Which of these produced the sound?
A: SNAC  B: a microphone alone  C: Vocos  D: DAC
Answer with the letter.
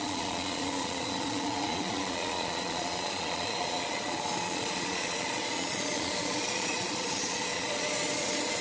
C